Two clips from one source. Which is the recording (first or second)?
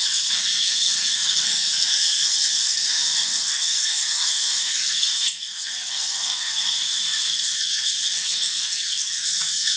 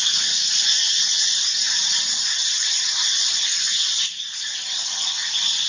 second